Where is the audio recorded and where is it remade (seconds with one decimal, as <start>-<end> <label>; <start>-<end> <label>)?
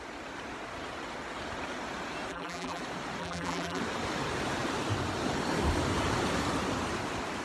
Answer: 0.0-2.3 recorded; 2.3-2.8 remade; 2.8-3.2 recorded; 3.2-3.8 remade; 3.8-7.4 recorded